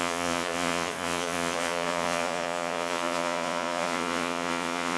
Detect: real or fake fake